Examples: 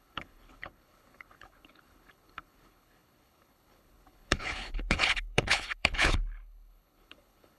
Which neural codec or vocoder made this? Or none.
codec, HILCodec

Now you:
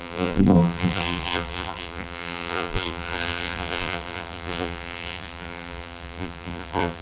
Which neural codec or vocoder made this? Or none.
vocoder, BigVGAN v2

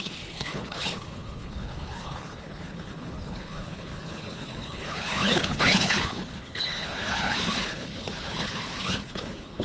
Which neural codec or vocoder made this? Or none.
codec, HILCodec